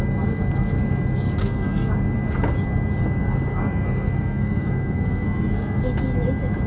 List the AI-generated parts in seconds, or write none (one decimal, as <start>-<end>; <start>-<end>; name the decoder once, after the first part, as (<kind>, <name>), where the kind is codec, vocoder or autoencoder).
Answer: 1.4-1.9 (codec, SNAC); 3.6-5.8

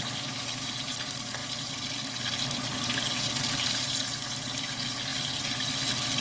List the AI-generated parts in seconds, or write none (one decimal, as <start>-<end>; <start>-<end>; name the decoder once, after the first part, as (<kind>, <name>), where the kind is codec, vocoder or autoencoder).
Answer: none

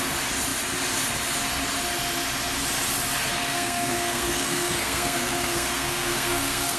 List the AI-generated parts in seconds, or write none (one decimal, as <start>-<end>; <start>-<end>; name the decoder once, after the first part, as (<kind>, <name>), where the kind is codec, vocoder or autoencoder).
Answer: 3.4-6.8 (codec, SNAC)

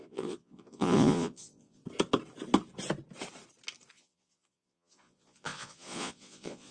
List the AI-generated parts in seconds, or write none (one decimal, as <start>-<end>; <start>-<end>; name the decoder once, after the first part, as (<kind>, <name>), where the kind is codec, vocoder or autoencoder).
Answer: 0.0-1.8 (vocoder, Vocos); 3.9-6.7

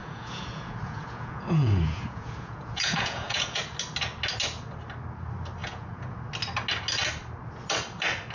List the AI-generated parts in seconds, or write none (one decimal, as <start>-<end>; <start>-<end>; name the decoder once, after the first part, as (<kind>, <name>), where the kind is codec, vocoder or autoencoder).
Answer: 0.0-3.6 (vocoder, Vocos); 5.6-6.2

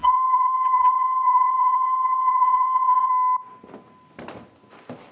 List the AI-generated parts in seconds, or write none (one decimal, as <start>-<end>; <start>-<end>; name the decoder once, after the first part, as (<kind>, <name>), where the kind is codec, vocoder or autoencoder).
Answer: 0.0-3.1 (vocoder, BigVGAN v2)

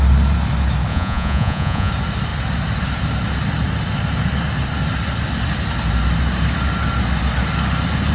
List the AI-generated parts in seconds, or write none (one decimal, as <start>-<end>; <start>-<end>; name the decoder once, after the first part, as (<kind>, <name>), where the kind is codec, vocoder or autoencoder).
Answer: 0.9-1.9 (vocoder, Vocos)

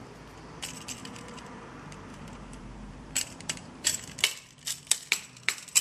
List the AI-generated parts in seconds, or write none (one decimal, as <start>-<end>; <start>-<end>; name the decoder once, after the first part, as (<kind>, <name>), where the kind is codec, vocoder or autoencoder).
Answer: 1.0-1.7 (vocoder, BigVGAN v2); 2.1-4.0